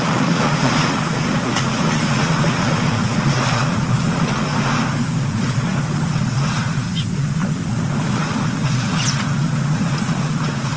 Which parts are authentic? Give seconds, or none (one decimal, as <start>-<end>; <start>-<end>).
4.5-5.3